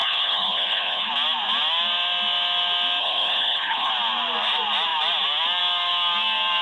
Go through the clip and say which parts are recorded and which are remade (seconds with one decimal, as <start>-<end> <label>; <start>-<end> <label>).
0.0-1.1 remade; 1.1-3.0 recorded; 3.0-3.9 remade; 3.9-6.6 recorded